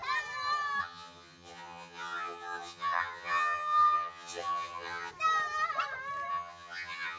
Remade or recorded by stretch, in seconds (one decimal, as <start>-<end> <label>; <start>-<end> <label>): 0.0-0.8 recorded; 0.8-5.1 remade; 5.1-6.3 recorded; 6.3-7.2 remade